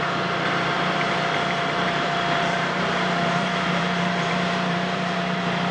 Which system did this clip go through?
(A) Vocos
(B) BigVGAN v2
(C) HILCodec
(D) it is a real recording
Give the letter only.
B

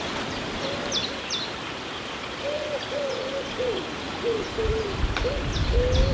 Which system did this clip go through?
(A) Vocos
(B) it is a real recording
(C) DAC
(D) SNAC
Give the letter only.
B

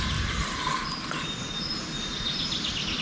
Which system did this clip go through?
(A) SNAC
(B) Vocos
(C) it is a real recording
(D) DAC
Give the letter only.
C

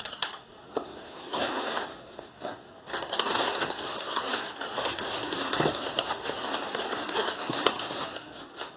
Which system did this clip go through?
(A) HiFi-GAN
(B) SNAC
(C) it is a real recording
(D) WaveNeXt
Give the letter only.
B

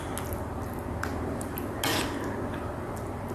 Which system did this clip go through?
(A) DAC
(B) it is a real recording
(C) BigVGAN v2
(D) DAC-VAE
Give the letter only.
B